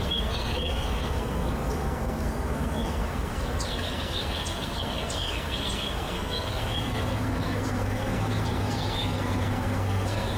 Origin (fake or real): fake